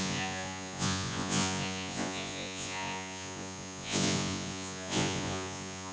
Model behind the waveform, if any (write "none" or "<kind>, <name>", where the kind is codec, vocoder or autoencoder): vocoder, Vocos